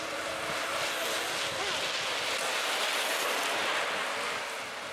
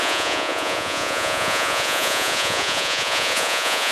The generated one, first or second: second